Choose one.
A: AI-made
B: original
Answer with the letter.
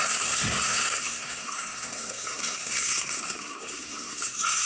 A